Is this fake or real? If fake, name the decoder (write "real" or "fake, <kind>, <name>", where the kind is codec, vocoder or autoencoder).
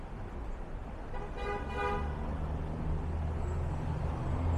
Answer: real